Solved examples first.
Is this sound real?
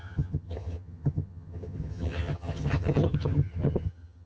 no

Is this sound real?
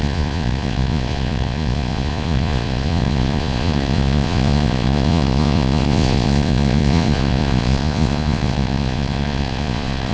no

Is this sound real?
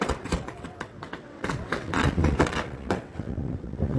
no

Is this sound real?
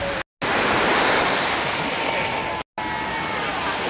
yes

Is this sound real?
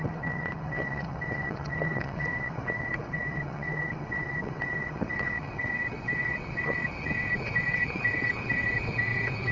no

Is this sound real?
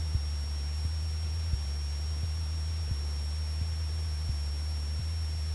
yes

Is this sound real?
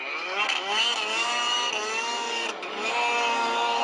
no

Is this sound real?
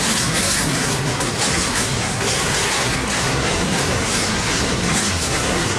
no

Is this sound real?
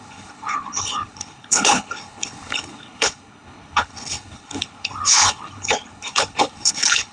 no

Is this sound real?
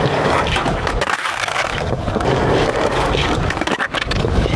no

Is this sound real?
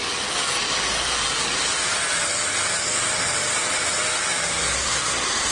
yes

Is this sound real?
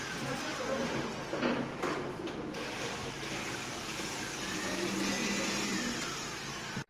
yes